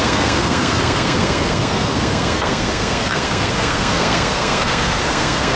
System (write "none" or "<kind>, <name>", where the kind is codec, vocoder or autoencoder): codec, SNAC